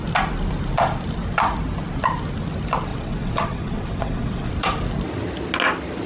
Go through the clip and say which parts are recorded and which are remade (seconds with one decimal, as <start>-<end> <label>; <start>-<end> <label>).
0.0-2.9 recorded; 2.9-4.5 remade; 4.5-6.1 recorded